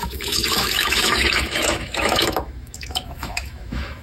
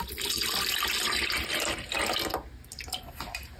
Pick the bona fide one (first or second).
second